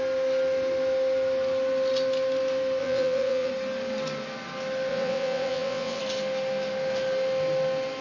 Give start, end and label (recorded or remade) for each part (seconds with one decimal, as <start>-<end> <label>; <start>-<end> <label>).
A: 0.0-2.8 recorded; 2.8-3.5 remade; 3.5-4.9 recorded; 4.9-6.0 remade; 6.0-8.0 recorded